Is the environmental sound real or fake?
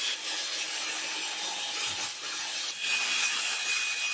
real